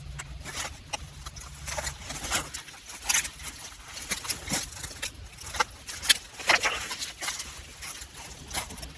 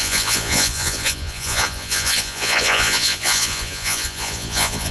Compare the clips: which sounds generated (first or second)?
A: second